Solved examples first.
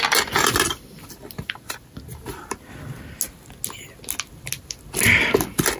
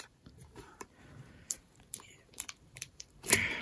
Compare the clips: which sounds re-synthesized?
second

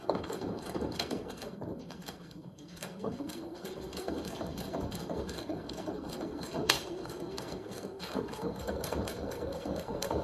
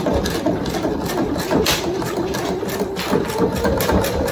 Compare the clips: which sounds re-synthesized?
first